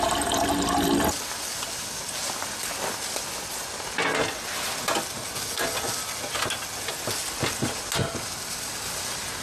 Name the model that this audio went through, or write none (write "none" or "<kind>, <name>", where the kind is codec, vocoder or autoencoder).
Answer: none